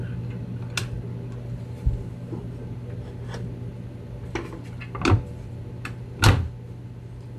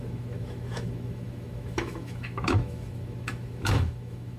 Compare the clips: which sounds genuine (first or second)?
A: first